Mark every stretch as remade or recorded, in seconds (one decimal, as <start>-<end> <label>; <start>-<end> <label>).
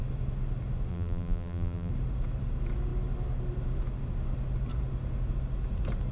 0.0-0.9 recorded; 0.9-1.9 remade; 1.9-6.1 recorded